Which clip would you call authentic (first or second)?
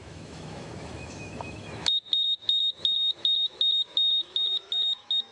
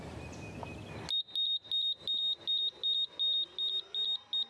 second